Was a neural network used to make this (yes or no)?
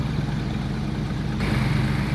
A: no